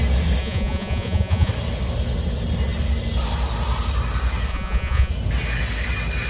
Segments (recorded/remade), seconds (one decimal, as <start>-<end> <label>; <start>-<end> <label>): 0.0-0.4 recorded; 0.4-1.5 remade; 1.5-4.5 recorded; 4.5-5.1 remade; 5.1-6.3 recorded